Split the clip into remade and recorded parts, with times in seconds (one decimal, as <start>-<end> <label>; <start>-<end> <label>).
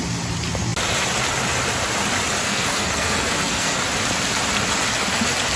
0.0-2.4 recorded; 2.4-3.8 remade; 3.8-5.6 recorded